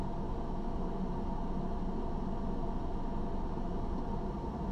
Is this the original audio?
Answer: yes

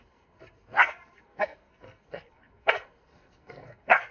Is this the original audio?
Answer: no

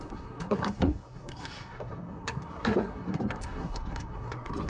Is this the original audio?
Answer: no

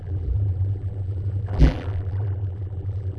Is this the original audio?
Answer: no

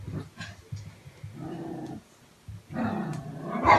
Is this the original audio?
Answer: yes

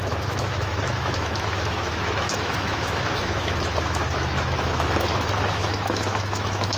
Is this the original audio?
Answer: no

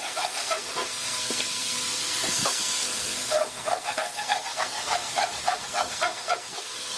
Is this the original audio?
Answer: no